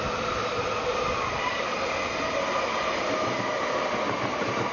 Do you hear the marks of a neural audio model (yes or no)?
no